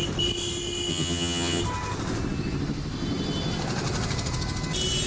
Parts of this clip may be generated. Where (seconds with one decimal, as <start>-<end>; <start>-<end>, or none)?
0.9-1.6

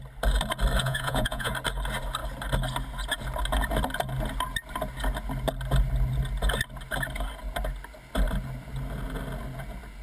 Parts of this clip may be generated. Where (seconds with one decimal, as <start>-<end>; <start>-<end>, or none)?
0.8-1.5

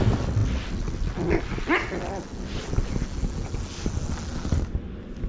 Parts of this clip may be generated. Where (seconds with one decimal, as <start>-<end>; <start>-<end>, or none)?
none

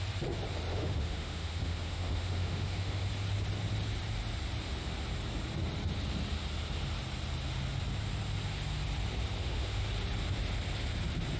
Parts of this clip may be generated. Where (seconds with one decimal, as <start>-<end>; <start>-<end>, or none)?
0.7-3.1; 9.4-9.9

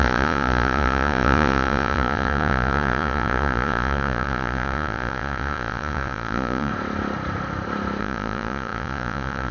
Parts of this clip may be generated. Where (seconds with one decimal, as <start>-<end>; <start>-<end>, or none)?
0.0-6.7; 8.0-9.5

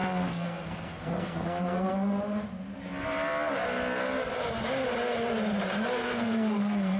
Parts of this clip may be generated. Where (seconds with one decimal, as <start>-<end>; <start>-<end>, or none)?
0.0-2.2; 6.0-7.0

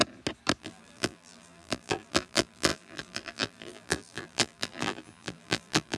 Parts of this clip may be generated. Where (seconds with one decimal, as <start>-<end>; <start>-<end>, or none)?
0.6-6.0